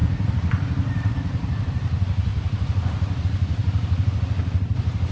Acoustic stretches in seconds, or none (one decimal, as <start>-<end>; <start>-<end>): 0.0-5.1